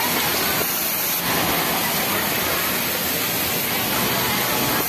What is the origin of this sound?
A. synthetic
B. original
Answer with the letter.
B